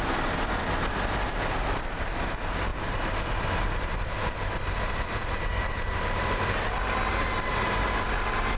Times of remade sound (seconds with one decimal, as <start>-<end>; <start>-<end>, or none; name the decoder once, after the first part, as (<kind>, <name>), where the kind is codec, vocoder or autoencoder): 2.7-6.4 (vocoder, BigVGAN v2)